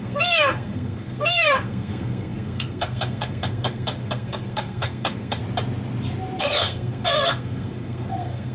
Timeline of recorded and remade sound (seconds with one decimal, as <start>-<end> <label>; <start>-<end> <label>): 0.0-5.4 remade; 5.4-6.4 recorded; 6.4-8.5 remade